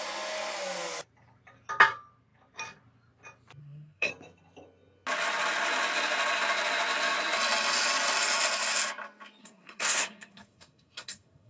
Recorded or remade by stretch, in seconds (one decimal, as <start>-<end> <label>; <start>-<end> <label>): 0.0-3.6 recorded; 3.6-4.1 remade; 4.1-9.4 recorded; 9.4-11.5 remade